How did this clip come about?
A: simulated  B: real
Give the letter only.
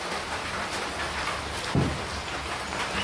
B